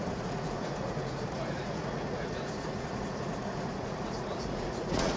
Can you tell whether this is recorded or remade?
remade